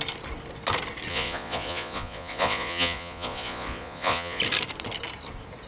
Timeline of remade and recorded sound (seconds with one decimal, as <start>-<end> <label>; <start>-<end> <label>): 0.0-1.1 recorded; 1.1-4.4 remade; 4.4-5.7 recorded